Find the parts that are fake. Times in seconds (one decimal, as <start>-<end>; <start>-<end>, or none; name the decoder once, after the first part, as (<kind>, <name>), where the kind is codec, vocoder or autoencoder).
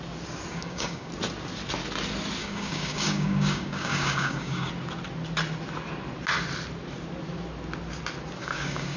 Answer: 0.5-1.1 (codec, DAC); 2.4-4.7; 8.4-9.0